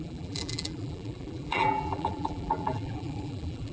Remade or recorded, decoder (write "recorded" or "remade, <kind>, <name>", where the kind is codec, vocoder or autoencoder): remade, vocoder, BigVGAN v2